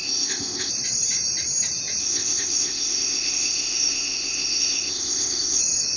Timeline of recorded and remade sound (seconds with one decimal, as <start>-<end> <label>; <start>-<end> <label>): 0.0-0.7 remade; 0.7-2.0 recorded; 2.0-5.6 remade; 5.6-6.0 recorded